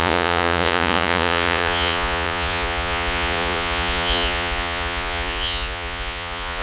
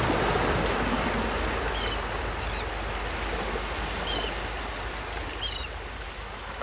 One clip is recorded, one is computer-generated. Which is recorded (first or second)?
second